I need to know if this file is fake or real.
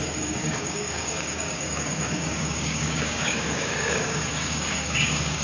fake